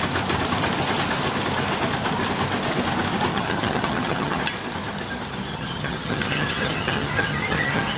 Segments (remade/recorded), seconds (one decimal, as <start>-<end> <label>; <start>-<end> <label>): 0.0-3.3 recorded; 3.3-4.4 remade; 4.4-5.5 recorded; 5.5-8.0 remade